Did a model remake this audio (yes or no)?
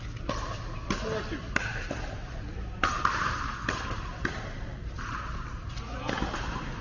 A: no